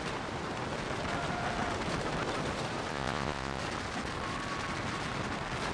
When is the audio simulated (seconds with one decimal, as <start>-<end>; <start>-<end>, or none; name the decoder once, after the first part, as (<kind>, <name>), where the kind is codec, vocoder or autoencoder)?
2.9-3.6 (vocoder, Vocos)